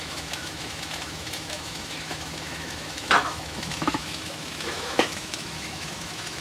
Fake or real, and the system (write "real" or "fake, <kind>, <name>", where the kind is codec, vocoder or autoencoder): fake, autoencoder, DAC-VAE